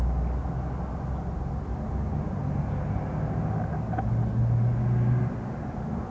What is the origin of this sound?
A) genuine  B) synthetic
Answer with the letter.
A